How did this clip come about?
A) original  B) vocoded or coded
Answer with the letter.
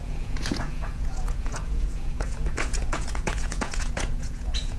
B